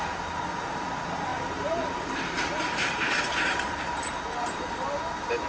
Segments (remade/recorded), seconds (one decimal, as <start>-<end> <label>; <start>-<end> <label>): 0.0-1.3 recorded; 1.3-4.6 remade; 4.6-5.5 recorded